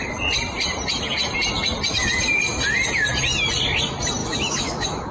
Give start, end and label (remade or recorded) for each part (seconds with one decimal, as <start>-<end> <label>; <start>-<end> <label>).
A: 0.0-4.2 recorded; 4.2-5.1 remade

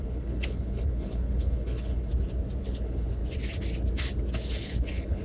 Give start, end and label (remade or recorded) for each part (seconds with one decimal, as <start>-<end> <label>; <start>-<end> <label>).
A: 0.0-2.1 remade; 2.1-2.6 recorded; 2.6-3.2 remade; 3.2-4.5 recorded; 4.5-5.2 remade

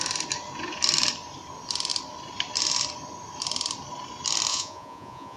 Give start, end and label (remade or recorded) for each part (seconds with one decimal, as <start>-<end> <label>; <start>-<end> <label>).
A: 0.0-4.5 recorded; 4.5-5.4 remade

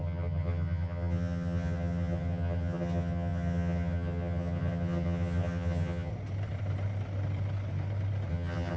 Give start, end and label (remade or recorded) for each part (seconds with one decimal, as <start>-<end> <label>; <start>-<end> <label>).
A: 0.0-6.1 remade; 6.1-8.3 recorded; 8.3-8.8 remade